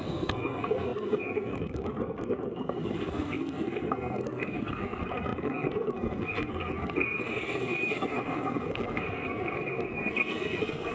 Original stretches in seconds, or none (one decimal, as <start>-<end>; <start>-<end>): none